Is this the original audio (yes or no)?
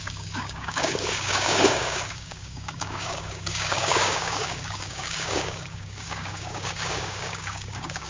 no